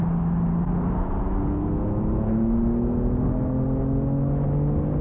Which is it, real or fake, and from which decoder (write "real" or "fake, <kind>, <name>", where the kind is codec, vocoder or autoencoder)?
real